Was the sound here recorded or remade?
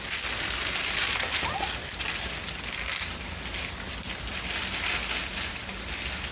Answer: recorded